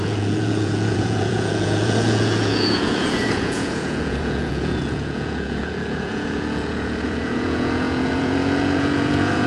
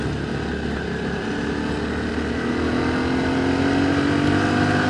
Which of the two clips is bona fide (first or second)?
second